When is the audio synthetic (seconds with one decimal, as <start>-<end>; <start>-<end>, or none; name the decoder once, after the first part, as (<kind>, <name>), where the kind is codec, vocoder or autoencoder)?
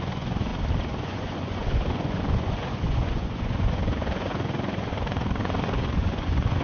0.0-0.5 (vocoder, Vocos); 1.0-6.6